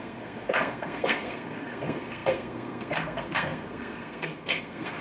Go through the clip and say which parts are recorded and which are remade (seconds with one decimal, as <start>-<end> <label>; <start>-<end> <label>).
0.0-5.0 remade